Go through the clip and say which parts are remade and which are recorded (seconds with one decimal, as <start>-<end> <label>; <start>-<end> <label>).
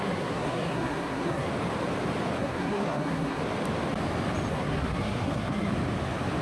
0.0-1.5 remade; 1.5-2.4 recorded; 2.4-3.4 remade; 3.4-4.5 recorded; 4.5-5.7 remade; 5.7-6.4 recorded